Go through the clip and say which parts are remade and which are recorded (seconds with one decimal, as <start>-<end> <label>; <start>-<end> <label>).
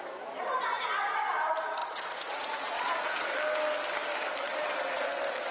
0.0-1.8 recorded; 1.8-3.3 remade; 3.3-5.5 recorded